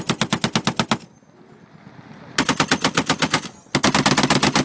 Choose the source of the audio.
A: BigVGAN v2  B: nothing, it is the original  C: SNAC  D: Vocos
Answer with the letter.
B